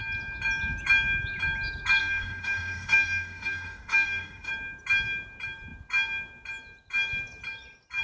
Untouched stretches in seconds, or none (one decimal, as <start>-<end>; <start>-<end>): 0.0-2.0; 4.5-8.0